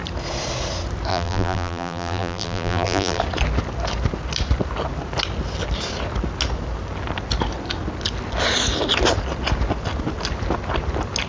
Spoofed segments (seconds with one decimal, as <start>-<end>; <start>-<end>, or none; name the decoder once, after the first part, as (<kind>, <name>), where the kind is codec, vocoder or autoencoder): 1.1-3.2 (vocoder, BigVGAN v2)